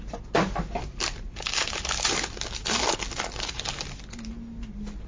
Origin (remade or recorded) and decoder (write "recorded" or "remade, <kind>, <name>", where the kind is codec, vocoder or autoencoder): recorded